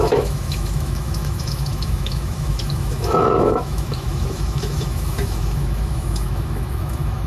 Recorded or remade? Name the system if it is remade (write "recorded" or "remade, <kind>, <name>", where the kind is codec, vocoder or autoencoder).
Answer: remade, autoencoder, DAC-VAE